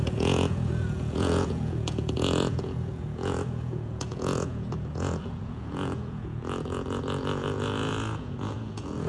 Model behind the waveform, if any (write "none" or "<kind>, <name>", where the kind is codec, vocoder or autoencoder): vocoder, Vocos